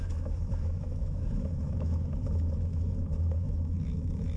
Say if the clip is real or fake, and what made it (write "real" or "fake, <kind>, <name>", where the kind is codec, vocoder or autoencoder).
fake, autoencoder, DAC-VAE